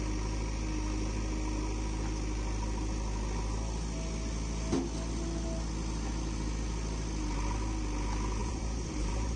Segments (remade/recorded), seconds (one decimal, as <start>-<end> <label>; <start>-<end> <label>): 0.0-8.4 recorded; 8.4-9.4 remade